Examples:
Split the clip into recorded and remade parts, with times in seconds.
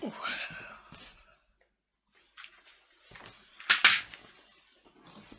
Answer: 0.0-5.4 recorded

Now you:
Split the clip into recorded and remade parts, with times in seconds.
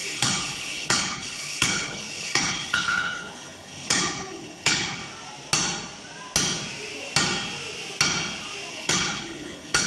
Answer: 0.0-5.0 remade; 5.0-8.7 recorded; 8.7-9.9 remade